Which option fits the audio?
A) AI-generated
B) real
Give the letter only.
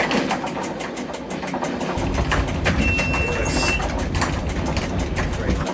B